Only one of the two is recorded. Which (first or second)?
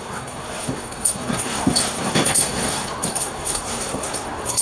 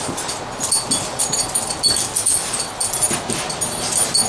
second